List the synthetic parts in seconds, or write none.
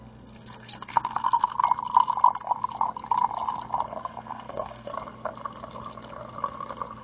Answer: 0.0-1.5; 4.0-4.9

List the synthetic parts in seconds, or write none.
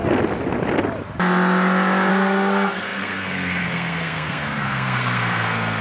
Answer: 2.1-5.8